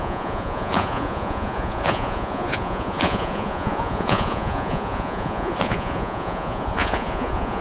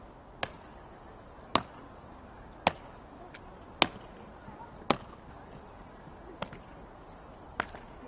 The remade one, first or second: first